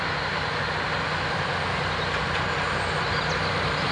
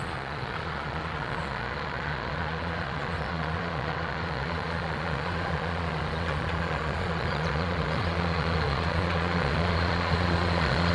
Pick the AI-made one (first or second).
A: second